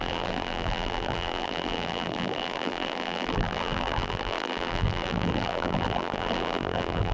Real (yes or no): no